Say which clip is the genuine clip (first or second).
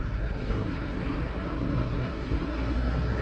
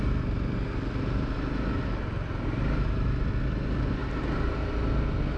second